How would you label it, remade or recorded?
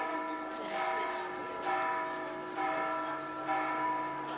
recorded